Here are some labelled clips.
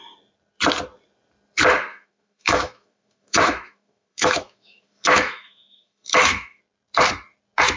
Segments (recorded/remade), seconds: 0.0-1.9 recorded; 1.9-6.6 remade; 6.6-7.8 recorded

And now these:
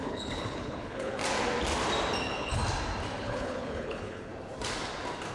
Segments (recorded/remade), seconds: 0.0-1.2 remade; 1.2-2.2 recorded; 2.2-2.6 remade; 2.6-3.2 recorded; 3.2-4.3 remade; 4.3-5.3 recorded